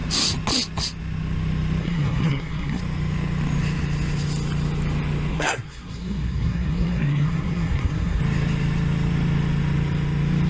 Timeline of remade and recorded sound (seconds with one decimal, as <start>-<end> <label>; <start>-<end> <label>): 0.0-1.8 recorded; 1.8-2.8 remade; 2.8-5.3 recorded; 5.3-8.2 remade; 8.2-10.5 recorded